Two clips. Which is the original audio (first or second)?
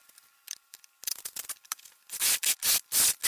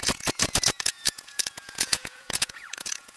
first